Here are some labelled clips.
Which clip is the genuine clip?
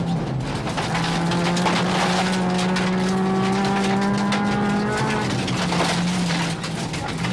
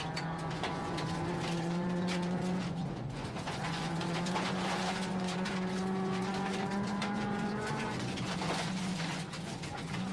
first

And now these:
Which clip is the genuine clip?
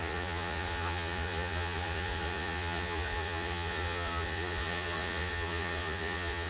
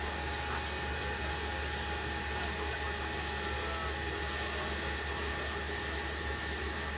second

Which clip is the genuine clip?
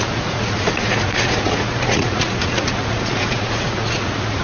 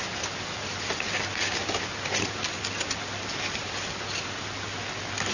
second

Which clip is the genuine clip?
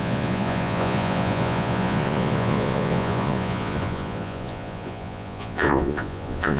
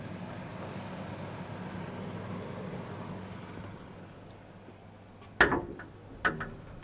second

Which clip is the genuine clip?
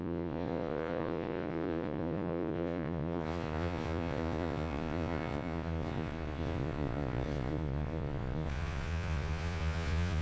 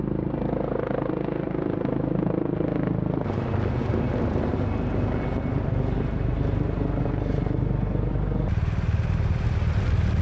second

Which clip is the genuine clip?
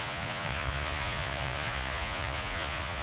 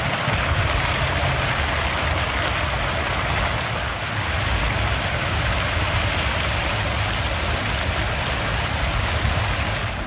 second